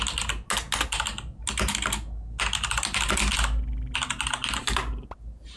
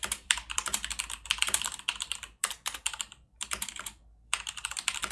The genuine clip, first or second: first